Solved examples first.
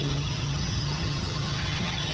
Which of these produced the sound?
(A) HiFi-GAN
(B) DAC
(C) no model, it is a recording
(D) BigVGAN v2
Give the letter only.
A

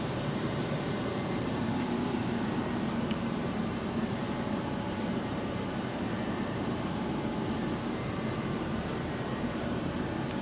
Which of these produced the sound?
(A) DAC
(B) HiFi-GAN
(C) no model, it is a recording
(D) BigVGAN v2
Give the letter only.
D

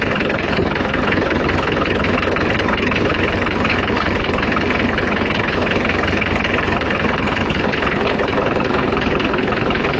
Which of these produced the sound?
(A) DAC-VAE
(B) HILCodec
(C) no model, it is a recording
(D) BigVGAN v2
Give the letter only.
B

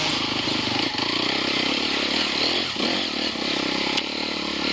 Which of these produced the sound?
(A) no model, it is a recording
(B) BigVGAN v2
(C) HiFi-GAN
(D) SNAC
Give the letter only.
A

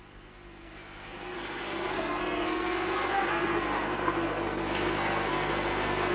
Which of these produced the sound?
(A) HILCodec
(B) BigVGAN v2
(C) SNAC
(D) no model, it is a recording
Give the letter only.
C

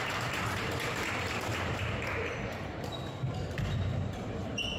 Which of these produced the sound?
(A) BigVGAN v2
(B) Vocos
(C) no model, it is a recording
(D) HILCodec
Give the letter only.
A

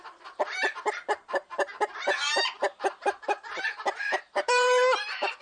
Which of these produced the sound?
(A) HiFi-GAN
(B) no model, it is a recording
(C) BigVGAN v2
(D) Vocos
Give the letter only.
C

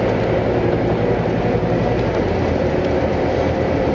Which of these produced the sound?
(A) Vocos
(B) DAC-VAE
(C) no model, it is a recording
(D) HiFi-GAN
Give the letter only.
C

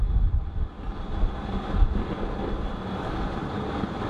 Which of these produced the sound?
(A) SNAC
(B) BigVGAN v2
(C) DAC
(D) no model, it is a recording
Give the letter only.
B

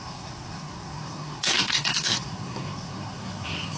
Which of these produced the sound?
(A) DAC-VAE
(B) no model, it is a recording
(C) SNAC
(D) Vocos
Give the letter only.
C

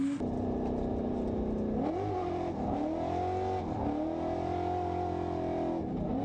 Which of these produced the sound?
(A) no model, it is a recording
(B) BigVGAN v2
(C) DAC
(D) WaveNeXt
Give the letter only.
A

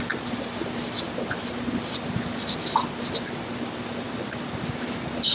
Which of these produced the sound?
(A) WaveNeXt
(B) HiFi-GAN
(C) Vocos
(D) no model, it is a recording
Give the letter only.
D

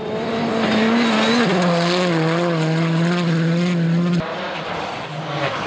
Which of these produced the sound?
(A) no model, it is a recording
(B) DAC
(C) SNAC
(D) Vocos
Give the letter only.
A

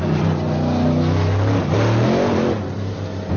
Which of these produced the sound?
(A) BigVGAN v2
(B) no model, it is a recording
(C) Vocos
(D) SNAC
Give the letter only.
B